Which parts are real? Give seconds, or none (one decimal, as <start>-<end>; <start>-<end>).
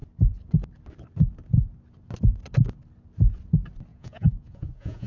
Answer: 0.0-3.9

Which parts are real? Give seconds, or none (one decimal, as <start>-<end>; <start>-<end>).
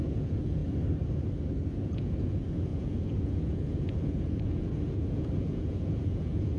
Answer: 0.6-1.7